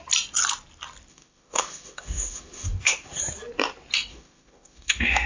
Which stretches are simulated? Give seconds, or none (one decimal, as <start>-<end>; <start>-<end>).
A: 1.1-3.2; 4.1-5.3